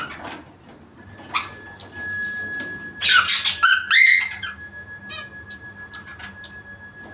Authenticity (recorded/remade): recorded